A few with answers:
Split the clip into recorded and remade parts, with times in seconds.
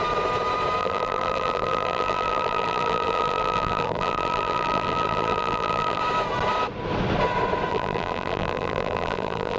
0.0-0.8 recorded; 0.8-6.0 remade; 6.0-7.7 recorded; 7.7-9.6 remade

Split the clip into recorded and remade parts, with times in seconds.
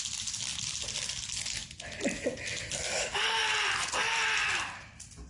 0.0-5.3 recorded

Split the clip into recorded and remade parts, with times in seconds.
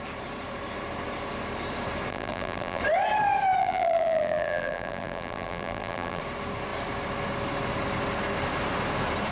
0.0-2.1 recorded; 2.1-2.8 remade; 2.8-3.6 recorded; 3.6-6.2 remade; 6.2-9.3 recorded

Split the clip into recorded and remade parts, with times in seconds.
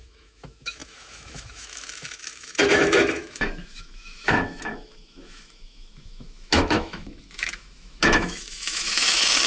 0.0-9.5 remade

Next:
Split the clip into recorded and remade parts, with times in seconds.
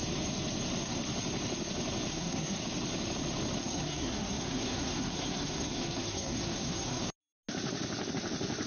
0.0-2.1 recorded; 2.1-2.6 remade; 2.6-3.6 recorded; 3.6-7.0 remade; 7.0-8.7 recorded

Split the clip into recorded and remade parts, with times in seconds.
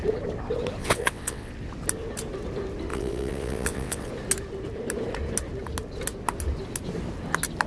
0.0-0.8 recorded; 0.8-1.5 remade; 1.5-2.9 recorded; 2.9-4.1 remade; 4.1-7.7 recorded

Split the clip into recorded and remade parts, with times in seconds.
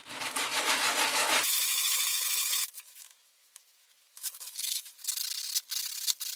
0.0-0.6 remade; 0.6-1.1 recorded; 1.1-4.9 remade; 4.9-6.4 recorded